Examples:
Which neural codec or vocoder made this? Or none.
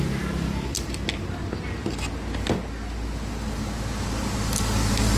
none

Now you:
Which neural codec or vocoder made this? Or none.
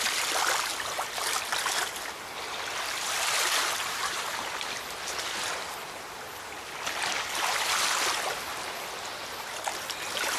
none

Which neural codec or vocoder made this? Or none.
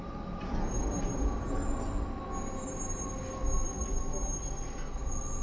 none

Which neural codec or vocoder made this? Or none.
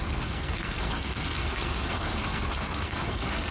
codec, SNAC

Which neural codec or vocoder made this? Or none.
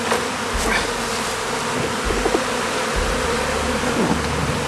none